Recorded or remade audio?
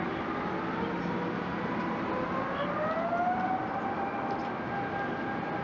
recorded